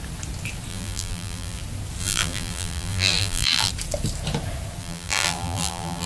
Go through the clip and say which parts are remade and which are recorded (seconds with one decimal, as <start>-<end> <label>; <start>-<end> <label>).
0.0-0.7 recorded; 0.7-1.6 remade; 1.6-2.0 recorded; 2.0-3.7 remade; 3.7-4.8 recorded; 4.8-6.1 remade

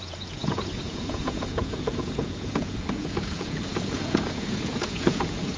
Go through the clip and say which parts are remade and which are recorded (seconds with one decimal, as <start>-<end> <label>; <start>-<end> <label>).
0.0-5.6 remade

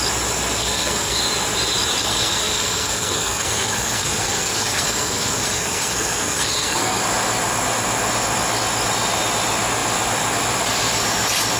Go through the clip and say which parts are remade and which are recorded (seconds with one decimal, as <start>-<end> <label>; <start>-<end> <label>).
0.0-0.6 recorded; 0.6-1.2 remade; 1.2-2.0 recorded; 2.0-7.0 remade; 7.0-11.6 recorded

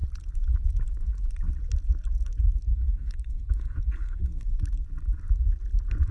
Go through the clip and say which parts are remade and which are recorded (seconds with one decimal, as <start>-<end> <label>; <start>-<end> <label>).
0.0-2.7 recorded; 2.7-4.5 remade; 4.5-6.1 recorded

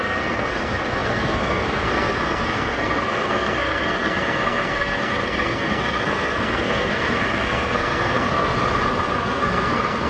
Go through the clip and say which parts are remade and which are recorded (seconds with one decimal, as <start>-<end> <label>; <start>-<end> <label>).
0.0-8.5 remade; 8.5-9.1 recorded; 9.1-10.1 remade

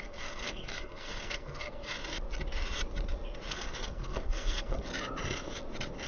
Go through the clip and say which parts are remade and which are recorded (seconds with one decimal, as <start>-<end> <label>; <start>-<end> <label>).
0.0-1.8 remade; 1.8-3.5 recorded; 3.5-4.9 remade; 4.9-6.1 recorded

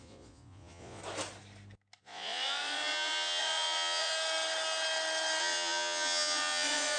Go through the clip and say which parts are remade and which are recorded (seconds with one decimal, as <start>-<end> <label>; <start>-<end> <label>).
0.0-1.0 remade; 1.0-2.0 recorded; 2.0-4.1 remade; 4.1-5.4 recorded; 5.4-7.0 remade